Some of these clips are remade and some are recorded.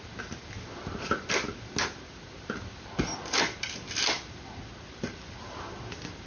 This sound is recorded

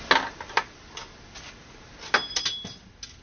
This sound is recorded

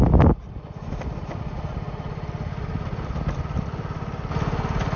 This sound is recorded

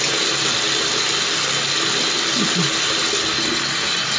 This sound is recorded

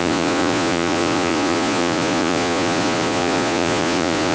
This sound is remade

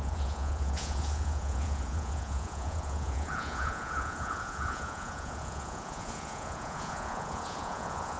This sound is remade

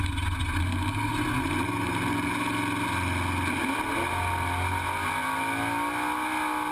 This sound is recorded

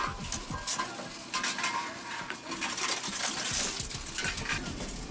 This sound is recorded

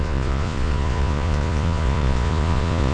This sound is remade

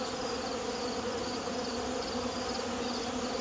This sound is recorded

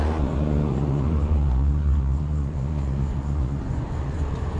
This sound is remade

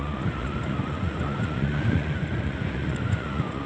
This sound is remade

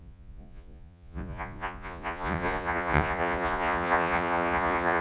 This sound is remade